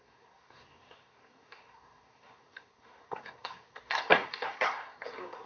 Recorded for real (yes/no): no